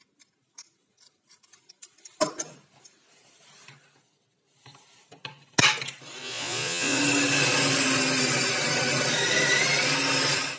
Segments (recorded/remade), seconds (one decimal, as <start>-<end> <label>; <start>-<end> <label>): 0.0-6.2 recorded; 6.2-7.0 remade; 7.0-10.6 recorded